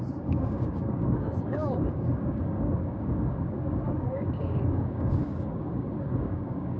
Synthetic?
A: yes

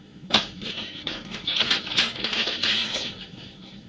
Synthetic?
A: yes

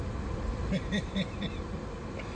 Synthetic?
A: no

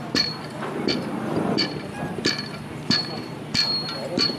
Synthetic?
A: yes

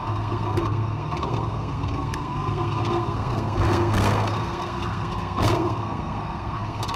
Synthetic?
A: yes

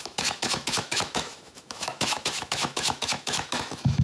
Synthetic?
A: yes